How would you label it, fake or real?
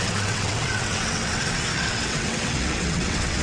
fake